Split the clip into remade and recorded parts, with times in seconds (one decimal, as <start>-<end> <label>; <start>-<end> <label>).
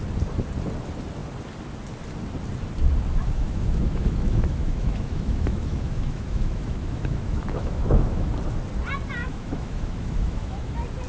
0.0-3.2 recorded; 3.2-8.3 remade; 8.3-9.2 recorded; 9.2-10.7 remade; 10.7-11.1 recorded